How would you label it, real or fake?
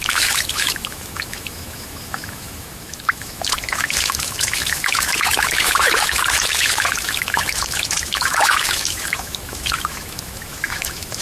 fake